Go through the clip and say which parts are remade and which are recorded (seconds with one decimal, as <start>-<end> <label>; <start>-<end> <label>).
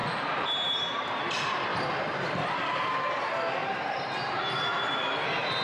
0.0-1.2 remade; 1.2-1.7 recorded; 1.7-3.2 remade; 3.2-3.6 recorded; 3.6-4.6 remade; 4.6-5.6 recorded